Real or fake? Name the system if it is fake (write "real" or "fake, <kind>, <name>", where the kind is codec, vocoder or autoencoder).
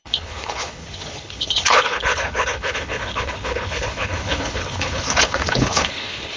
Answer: fake, codec, HILCodec